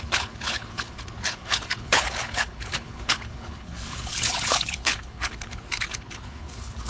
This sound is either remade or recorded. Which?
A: remade